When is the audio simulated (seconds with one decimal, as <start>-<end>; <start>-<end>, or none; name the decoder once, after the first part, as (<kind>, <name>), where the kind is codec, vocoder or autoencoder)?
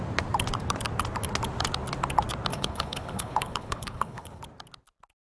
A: 2.5-4.4 (codec, HILCodec)